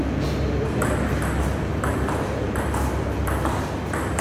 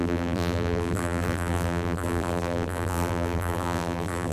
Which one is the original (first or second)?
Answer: first